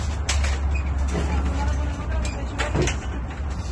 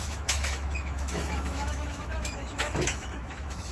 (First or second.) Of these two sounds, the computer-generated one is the second